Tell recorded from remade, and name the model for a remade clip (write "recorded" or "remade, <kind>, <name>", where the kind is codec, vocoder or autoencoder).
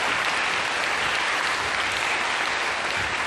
recorded